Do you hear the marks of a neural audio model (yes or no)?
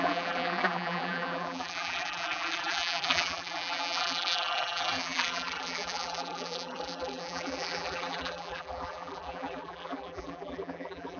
yes